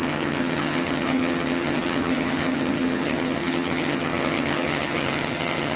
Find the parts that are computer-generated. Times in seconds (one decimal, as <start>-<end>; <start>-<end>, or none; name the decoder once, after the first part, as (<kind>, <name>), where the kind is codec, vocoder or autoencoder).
0.0-5.8 (vocoder, HiFi-GAN)